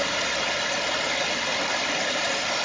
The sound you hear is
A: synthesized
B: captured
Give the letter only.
B